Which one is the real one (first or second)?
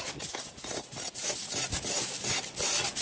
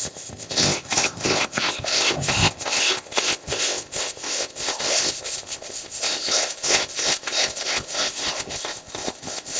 first